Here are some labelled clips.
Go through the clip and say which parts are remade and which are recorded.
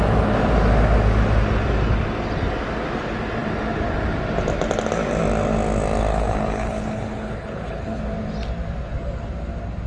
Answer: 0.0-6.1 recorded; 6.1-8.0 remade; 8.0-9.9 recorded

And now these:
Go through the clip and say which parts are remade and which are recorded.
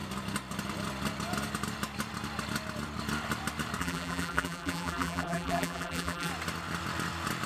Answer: 0.0-3.8 recorded; 3.8-6.3 remade; 6.3-7.5 recorded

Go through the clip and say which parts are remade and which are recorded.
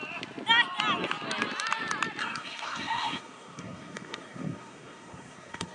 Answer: 0.0-2.2 recorded; 2.2-5.7 remade